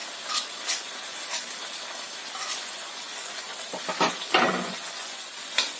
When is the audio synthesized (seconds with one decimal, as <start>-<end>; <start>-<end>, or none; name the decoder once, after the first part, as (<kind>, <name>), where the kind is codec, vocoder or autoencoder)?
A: 0.7-1.3 (vocoder, Vocos); 2.4-3.5; 4.4-5.8